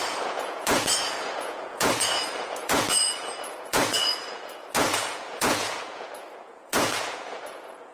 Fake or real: fake